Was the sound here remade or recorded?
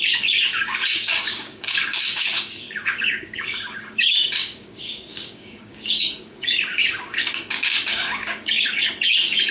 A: remade